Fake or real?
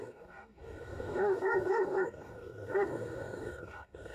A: fake